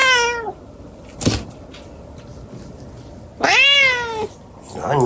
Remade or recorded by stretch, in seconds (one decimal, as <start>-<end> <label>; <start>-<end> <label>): 0.0-5.1 recorded